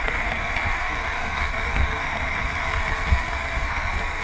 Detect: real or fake fake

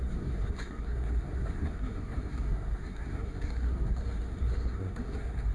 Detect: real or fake fake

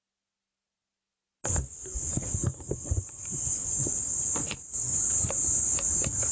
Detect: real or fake real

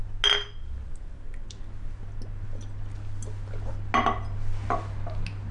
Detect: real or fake real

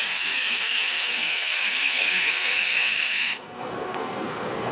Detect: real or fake fake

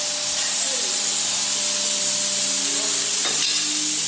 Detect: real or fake real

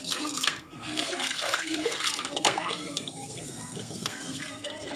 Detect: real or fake fake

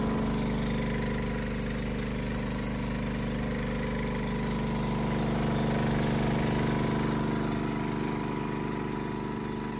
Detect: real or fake real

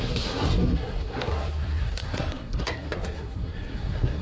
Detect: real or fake fake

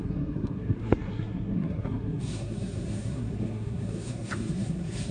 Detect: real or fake fake